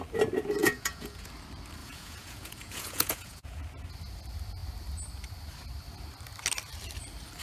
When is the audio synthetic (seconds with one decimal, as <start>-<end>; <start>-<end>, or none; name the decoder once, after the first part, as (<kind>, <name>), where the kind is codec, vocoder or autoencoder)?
0.6-1.3 (vocoder, Vocos); 1.8-3.6